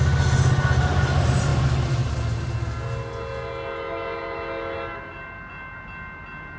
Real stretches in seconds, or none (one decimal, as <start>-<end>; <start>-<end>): 0.0-6.6